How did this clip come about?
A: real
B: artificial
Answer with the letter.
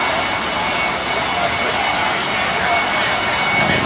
A